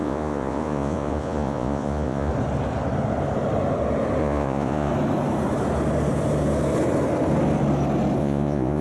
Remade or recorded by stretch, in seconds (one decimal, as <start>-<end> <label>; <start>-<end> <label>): 0.0-2.3 remade; 2.3-4.2 recorded; 4.2-4.9 remade; 4.9-8.2 recorded; 8.2-8.8 remade